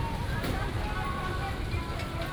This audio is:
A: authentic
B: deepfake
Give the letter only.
A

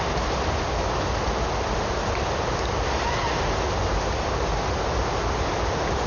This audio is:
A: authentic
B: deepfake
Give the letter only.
A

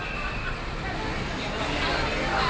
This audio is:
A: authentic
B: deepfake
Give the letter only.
A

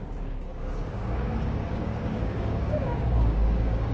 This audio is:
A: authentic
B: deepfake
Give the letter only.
B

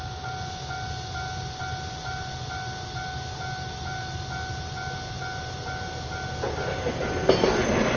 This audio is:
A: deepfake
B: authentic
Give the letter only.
B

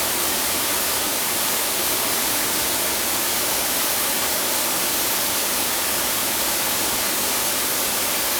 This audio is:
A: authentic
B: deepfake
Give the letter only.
B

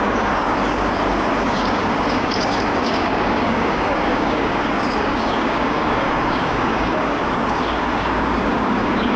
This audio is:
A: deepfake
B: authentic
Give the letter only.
A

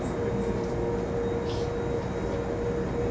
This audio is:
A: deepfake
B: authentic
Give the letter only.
B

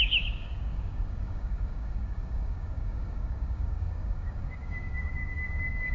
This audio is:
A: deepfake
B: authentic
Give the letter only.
A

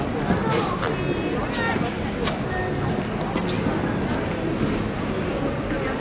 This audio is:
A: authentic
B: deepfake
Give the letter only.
A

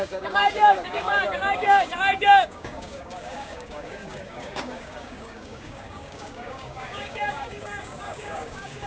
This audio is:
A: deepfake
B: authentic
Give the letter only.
A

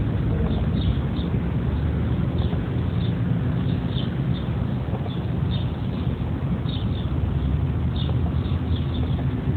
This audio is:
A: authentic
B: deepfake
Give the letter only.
A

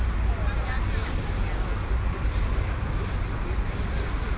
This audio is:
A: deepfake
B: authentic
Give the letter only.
B